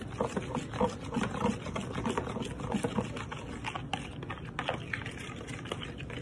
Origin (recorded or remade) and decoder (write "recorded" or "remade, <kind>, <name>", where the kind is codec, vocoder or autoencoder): recorded